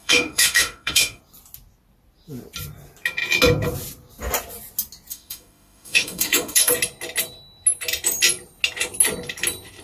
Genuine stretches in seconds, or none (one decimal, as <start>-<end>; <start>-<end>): 1.2-5.1; 6.7-9.8